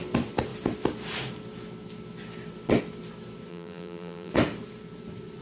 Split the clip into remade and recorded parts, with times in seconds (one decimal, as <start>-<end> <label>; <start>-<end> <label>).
0.0-3.5 recorded; 3.5-4.3 remade; 4.3-5.4 recorded